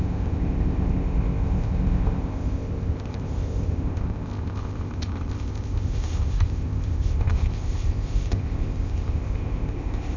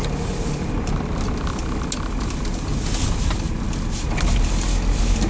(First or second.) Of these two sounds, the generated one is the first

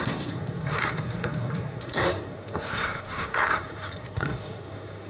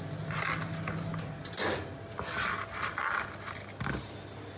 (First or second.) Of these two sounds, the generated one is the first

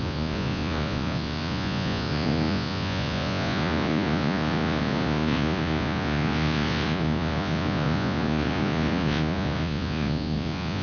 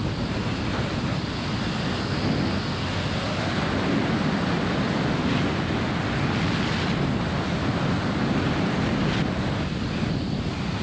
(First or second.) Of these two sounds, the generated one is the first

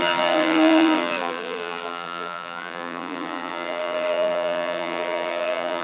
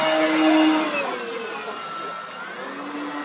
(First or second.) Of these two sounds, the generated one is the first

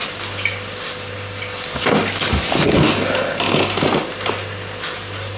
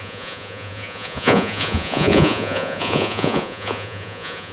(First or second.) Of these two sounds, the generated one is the second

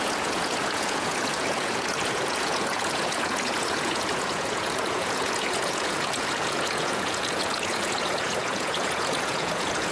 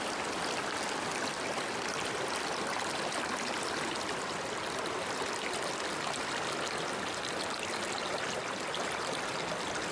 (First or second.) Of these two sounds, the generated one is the first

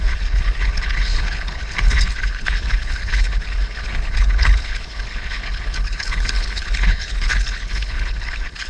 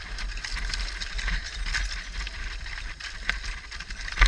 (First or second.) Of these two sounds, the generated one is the first